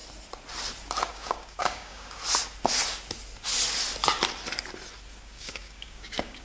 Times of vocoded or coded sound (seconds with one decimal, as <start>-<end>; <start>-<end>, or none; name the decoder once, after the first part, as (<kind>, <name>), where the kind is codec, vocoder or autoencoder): 1.1-2.2 (codec, DAC); 5.2-6.4